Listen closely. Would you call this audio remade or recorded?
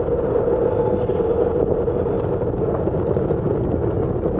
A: recorded